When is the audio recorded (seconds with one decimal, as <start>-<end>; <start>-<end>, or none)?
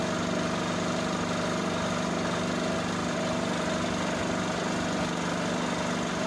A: 0.0-6.3